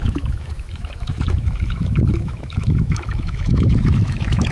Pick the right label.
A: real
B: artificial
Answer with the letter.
B